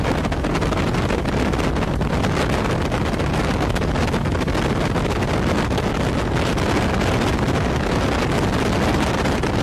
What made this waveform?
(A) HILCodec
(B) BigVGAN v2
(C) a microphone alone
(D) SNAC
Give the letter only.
C